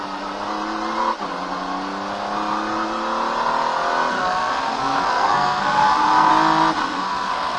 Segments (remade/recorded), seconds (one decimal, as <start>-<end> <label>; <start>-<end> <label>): 0.0-4.1 recorded; 4.1-6.3 remade; 6.3-6.8 recorded; 6.8-7.6 remade